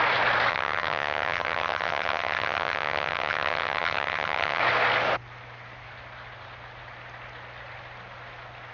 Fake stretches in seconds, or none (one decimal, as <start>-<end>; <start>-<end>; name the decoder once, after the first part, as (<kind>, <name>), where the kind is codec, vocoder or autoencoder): 0.5-4.6 (vocoder, HiFi-GAN)